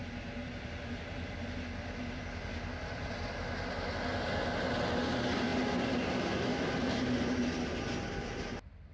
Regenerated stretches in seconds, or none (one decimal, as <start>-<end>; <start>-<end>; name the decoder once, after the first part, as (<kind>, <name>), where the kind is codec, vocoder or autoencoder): none